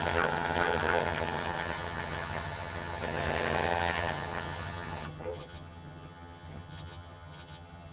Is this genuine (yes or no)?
no